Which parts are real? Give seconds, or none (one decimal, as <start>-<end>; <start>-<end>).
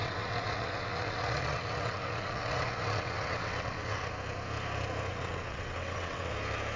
4.1-5.1; 6.3-6.8